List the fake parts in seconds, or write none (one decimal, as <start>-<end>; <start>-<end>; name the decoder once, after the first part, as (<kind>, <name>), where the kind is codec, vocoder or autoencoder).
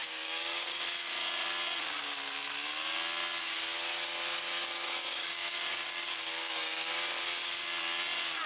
0.0-0.8 (codec, DAC); 4.6-6.9